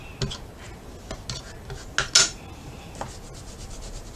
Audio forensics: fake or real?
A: real